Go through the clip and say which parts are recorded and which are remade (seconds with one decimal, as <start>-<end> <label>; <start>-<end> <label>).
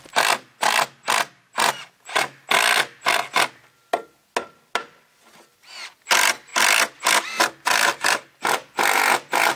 0.0-9.6 recorded